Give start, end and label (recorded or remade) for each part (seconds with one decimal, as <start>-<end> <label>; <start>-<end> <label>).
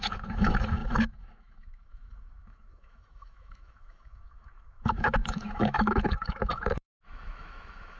0.0-8.0 remade